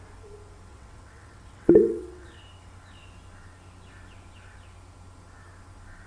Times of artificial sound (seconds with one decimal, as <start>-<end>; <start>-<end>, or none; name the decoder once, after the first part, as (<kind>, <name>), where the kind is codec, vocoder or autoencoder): 0.7-2.4 (vocoder, WaveNeXt)

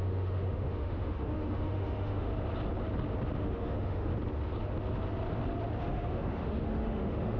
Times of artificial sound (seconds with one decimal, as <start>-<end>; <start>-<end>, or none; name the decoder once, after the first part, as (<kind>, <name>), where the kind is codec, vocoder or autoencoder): 0.0-2.3 (autoencoder, DAC-VAE); 3.4-4.1; 5.8-7.4

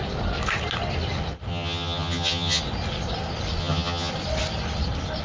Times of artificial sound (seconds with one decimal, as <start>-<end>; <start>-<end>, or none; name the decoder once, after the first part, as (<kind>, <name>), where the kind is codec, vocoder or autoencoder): 1.5-2.6 (vocoder, HiFi-GAN); 3.6-4.1